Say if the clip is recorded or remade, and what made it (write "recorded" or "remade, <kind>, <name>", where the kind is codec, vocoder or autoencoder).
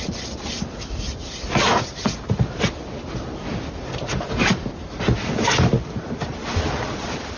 recorded